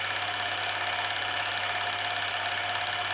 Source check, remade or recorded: recorded